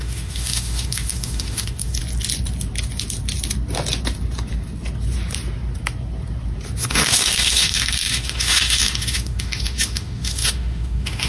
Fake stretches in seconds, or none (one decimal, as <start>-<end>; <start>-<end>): 0.0-2.0; 6.8-11.3